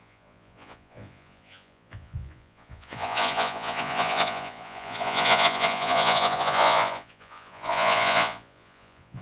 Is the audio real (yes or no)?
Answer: no